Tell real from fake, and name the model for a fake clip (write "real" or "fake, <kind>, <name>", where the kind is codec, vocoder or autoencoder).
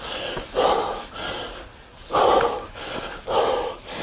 real